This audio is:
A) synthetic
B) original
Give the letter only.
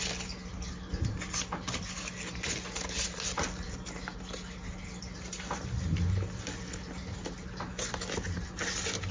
B